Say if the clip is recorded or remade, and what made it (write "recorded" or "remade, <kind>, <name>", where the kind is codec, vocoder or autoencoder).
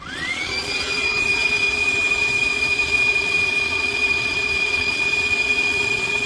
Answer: remade, vocoder, Vocos